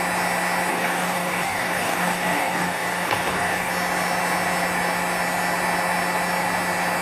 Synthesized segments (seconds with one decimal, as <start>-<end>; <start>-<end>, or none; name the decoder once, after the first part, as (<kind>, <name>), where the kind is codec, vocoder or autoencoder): 0.7-3.7 (codec, DAC)